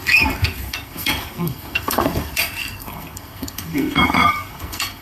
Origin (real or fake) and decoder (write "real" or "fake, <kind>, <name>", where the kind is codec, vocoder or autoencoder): fake, codec, SNAC